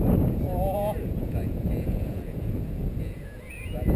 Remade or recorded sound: remade